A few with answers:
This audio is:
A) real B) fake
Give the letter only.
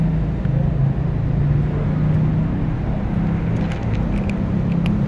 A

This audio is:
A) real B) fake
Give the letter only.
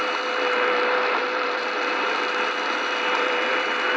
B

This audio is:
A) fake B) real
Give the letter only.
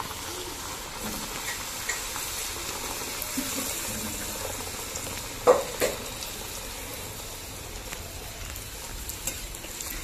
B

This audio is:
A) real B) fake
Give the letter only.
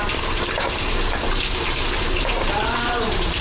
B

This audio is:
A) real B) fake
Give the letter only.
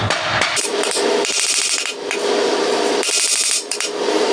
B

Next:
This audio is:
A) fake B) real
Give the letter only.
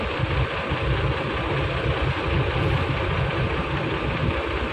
A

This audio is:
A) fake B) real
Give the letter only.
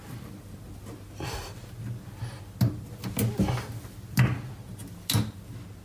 B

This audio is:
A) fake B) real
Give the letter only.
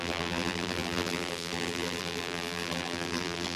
A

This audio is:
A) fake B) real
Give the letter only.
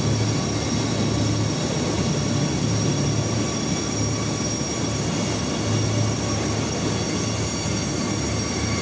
B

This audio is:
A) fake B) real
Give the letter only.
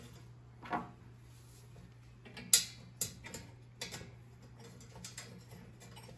B